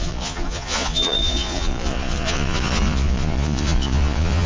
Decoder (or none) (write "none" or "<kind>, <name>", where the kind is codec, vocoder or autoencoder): vocoder, Vocos